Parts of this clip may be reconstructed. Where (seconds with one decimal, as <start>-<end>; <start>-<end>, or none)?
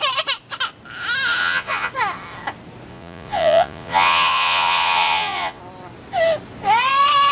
1.4-1.9; 2.9-5.6